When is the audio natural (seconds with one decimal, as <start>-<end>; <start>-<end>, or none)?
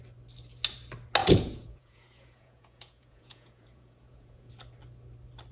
0.0-1.2; 4.5-5.5